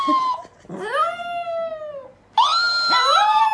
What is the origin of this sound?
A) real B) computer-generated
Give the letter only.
A